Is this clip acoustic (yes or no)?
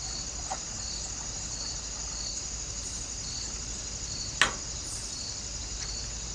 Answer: yes